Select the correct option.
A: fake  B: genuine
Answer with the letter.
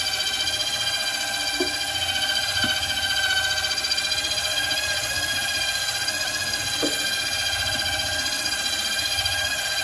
B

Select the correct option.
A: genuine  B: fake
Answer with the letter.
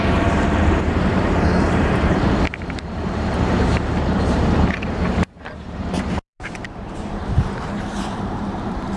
B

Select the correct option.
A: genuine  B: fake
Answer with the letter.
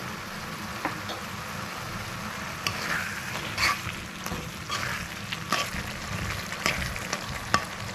A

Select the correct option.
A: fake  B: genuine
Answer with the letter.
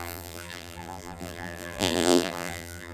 A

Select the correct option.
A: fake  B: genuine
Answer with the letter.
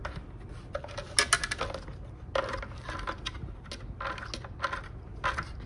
B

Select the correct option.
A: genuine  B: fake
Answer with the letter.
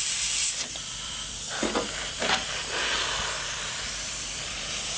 B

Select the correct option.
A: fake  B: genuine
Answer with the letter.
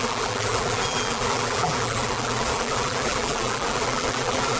A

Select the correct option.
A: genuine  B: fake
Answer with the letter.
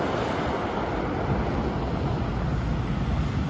A